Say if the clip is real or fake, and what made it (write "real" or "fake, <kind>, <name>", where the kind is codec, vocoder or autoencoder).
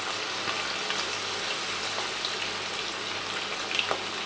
real